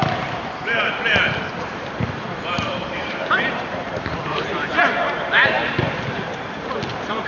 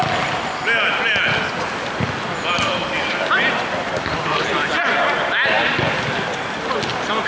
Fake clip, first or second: first